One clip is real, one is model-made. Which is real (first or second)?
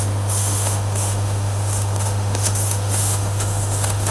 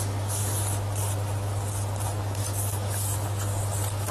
second